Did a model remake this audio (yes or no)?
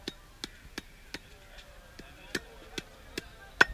no